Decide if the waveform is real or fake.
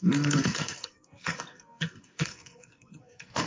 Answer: fake